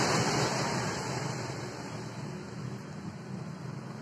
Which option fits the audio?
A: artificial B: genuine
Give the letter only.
B